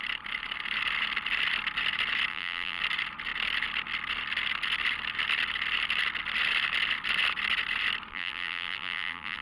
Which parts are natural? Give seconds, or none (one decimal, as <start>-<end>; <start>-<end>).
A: 0.0-2.3; 2.8-8.1

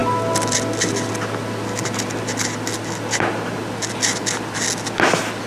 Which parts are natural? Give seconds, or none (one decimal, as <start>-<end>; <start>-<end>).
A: 0.0-5.5

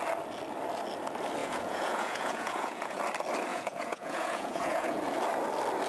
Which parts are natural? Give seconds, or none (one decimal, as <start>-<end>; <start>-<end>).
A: 0.0-1.4; 3.0-3.5; 5.0-5.9

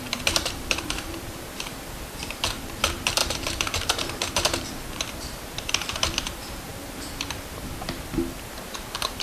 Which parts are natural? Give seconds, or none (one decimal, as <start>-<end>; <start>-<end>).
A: 6.7-8.5

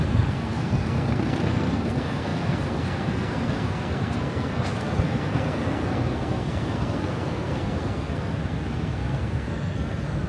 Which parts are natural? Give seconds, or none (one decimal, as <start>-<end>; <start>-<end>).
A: none

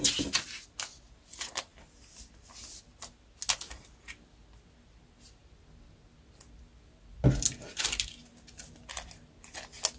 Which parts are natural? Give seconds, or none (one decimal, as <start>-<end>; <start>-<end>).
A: 0.0-10.0

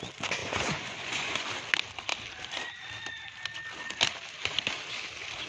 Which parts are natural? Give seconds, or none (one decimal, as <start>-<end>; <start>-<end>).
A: 0.0-0.4; 1.5-5.5

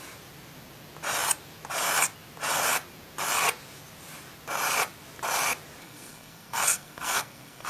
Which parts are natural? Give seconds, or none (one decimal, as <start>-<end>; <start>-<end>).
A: 0.0-5.8